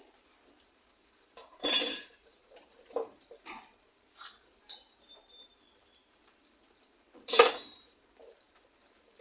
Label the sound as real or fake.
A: fake